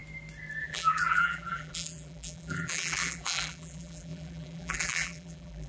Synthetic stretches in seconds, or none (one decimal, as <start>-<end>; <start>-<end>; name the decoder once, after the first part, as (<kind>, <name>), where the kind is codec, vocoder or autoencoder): 0.6-5.7 (vocoder, BigVGAN v2)

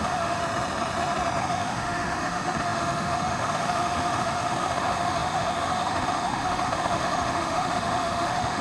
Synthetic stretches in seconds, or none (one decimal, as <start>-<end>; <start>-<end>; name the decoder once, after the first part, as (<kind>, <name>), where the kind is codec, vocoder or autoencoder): 0.0-0.4 (autoencoder, DAC-VAE); 1.4-8.6

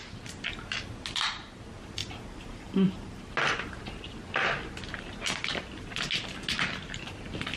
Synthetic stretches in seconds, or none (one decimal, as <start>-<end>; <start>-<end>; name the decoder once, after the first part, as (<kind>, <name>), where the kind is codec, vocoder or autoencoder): 2.0-3.2 (vocoder, BigVGAN v2)

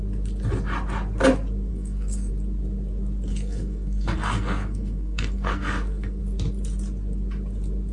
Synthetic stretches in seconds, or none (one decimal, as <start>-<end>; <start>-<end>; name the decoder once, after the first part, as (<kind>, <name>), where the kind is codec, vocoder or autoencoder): 1.7-2.3 (codec, SNAC); 3.3-6.2

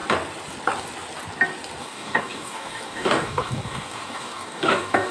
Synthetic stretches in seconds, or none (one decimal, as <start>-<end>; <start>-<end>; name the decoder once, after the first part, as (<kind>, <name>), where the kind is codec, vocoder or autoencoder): 1.8-5.1 (codec, DAC)

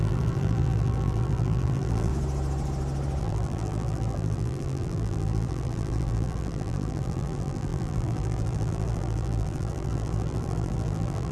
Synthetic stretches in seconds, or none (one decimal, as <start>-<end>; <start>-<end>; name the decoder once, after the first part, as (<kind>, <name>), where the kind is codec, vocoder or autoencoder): 0.0-2.1 (vocoder, BigVGAN v2); 3.2-11.3

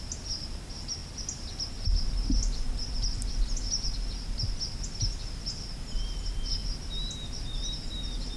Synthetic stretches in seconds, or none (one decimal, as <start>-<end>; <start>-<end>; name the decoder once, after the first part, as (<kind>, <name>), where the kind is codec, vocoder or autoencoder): none

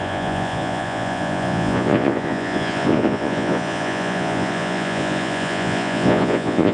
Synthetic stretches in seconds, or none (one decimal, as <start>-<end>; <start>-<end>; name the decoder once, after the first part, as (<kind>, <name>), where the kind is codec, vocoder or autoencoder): 0.0-6.7 (vocoder, Vocos)